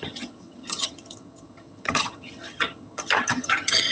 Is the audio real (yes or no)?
no